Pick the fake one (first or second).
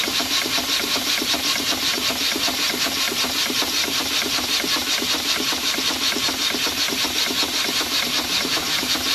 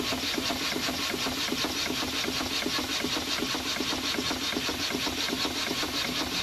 first